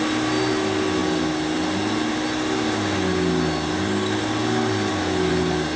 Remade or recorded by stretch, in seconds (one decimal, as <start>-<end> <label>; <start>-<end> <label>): 0.0-5.8 recorded